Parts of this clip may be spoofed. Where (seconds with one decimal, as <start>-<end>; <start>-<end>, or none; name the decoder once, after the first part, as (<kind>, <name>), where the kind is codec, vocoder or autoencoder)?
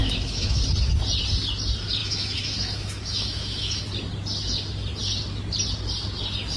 0.0-0.6 (autoencoder, DAC-VAE); 2.0-3.8